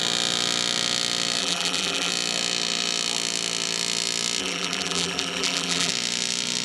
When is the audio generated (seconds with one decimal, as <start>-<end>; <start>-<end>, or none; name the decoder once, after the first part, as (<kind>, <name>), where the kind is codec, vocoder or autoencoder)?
1.4-2.1 (vocoder, BigVGAN v2); 4.4-5.9